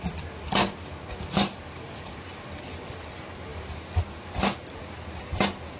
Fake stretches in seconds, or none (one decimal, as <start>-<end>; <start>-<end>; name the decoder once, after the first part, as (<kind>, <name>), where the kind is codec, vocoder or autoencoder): none